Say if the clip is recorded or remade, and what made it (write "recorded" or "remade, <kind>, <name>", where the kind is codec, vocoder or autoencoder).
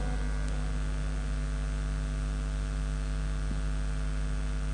recorded